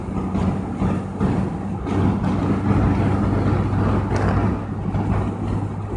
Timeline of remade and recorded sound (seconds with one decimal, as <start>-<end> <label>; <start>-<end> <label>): 0.0-6.0 recorded